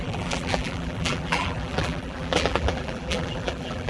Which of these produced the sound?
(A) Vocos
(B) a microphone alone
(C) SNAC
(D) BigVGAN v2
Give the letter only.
D